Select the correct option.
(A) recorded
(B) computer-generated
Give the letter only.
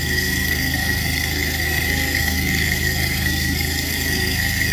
B